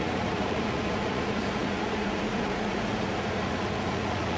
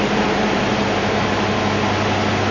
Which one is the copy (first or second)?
first